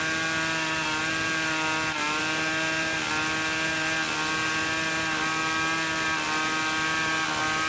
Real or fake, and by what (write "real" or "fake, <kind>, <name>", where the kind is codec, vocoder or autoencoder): real